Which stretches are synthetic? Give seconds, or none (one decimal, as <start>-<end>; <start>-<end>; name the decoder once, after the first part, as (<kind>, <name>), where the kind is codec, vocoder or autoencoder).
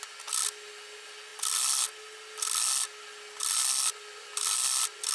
none